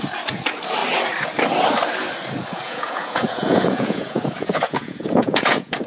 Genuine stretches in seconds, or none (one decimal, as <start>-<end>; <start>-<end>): 0.0-2.5